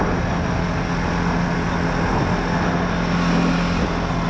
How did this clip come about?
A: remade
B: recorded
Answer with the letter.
B